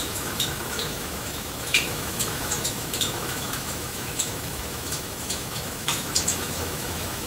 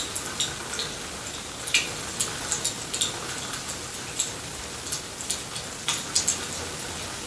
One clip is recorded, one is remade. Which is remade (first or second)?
first